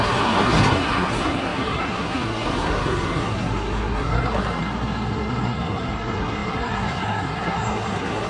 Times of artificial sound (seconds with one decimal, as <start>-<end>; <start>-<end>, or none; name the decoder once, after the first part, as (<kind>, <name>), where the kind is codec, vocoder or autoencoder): 0.0-8.3 (codec, SNAC)